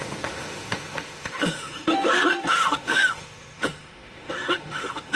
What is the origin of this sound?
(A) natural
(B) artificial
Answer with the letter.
B